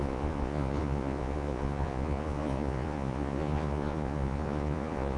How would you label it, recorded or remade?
remade